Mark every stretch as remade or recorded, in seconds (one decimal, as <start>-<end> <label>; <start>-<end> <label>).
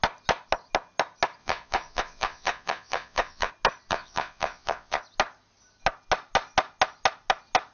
0.0-1.4 recorded; 1.4-3.5 remade; 3.5-3.9 recorded; 3.9-5.0 remade; 5.0-7.7 recorded